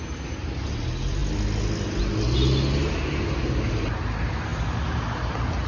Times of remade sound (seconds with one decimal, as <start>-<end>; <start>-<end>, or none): none